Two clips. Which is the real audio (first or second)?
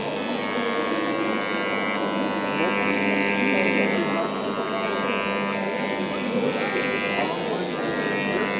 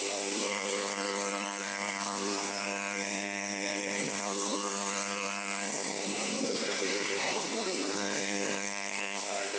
first